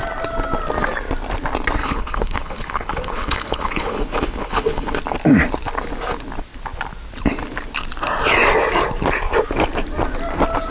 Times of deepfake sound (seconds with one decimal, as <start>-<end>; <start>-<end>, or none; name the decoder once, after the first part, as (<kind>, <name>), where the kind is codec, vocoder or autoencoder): 1.8-5.0 (codec, HILCodec)